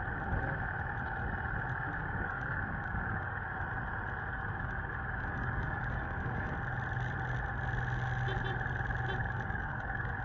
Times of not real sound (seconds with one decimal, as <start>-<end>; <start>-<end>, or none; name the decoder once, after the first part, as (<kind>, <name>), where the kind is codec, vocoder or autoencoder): 2.0-3.5 (codec, DAC); 4.3-6.5; 9.2-10.2